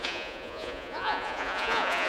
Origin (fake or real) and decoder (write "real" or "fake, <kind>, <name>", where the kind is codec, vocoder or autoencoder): fake, vocoder, Vocos